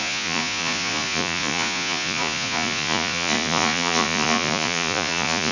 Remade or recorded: remade